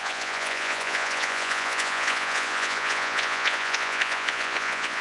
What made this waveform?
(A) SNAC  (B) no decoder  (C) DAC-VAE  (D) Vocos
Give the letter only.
D